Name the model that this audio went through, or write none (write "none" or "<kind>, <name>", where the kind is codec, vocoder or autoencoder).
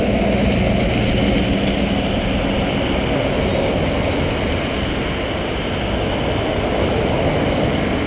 none